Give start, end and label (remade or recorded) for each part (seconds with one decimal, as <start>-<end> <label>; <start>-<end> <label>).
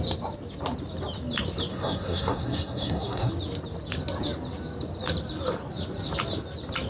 0.0-1.7 recorded; 1.7-3.3 remade; 3.3-6.9 recorded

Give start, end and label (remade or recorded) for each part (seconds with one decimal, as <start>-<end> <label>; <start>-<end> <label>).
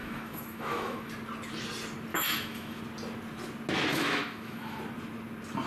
0.0-1.1 remade; 1.1-2.1 recorded; 2.1-2.8 remade; 2.8-3.9 recorded; 3.9-4.8 remade; 4.8-5.7 recorded